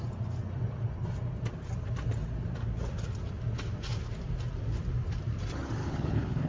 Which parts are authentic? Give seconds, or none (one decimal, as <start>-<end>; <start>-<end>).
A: 0.0-5.8